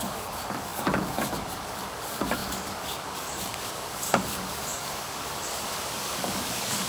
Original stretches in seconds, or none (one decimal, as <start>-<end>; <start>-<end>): none